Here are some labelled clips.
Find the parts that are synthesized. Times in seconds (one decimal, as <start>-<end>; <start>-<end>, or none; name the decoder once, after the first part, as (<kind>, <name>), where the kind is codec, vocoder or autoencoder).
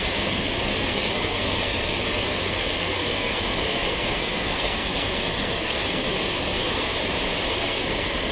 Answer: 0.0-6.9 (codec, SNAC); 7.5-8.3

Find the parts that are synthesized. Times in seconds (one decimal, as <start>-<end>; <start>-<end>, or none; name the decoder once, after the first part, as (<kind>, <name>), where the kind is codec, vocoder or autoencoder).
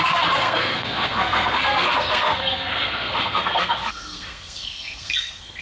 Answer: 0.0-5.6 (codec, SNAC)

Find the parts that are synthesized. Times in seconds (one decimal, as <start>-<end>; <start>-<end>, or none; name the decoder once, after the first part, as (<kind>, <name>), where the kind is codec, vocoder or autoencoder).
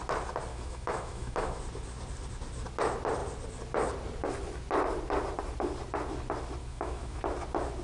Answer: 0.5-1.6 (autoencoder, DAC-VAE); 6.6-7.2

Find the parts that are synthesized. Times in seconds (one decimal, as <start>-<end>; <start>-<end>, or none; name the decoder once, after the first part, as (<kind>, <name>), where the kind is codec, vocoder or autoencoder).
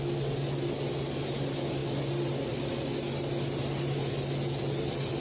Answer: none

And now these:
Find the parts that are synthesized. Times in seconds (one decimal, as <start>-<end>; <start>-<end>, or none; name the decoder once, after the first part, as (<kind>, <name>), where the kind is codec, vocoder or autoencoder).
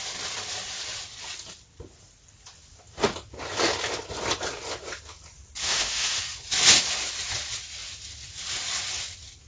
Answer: 5.6-6.2 (autoencoder, DAC-VAE)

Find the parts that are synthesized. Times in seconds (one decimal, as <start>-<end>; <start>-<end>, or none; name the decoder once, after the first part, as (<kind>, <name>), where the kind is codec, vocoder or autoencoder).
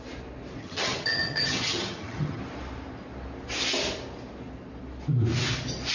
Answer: 0.6-2.4 (vocoder, HiFi-GAN)